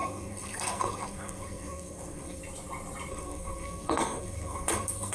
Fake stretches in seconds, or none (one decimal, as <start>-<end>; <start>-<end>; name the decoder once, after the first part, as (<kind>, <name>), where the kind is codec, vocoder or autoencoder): 0.0-2.4 (codec, SNAC); 3.1-5.1